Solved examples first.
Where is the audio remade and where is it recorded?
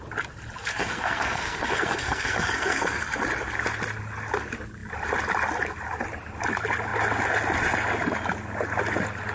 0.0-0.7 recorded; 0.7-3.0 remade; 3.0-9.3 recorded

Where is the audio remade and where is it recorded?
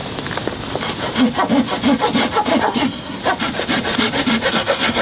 0.0-2.6 recorded; 2.6-3.2 remade; 3.2-4.5 recorded; 4.5-5.0 remade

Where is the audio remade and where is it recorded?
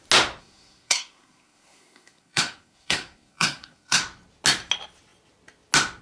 0.0-0.4 recorded; 0.4-4.0 remade; 4.0-6.0 recorded